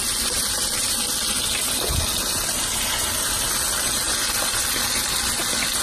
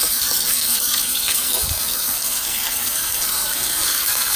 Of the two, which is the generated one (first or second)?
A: second